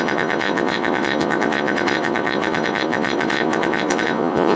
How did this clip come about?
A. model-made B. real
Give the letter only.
A